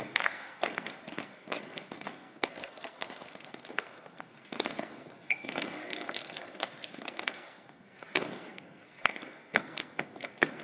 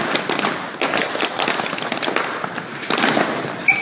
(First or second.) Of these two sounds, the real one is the second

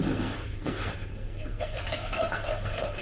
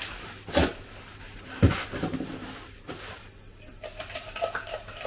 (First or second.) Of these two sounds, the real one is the second